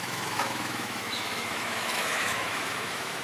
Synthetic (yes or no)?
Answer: yes